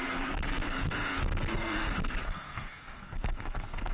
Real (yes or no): no